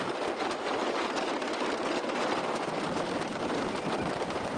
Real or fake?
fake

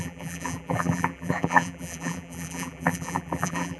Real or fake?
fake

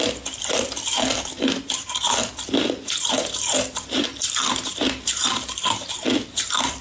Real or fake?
fake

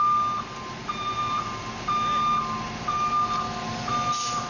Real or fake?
real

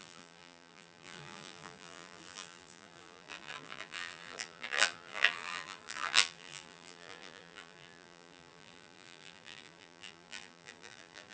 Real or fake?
fake